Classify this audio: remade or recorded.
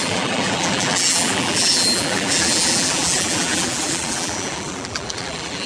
remade